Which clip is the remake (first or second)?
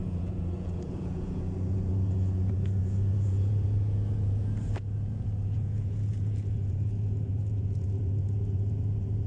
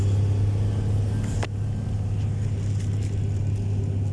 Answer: first